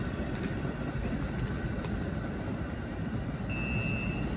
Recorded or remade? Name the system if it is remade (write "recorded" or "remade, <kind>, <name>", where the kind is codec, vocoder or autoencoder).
recorded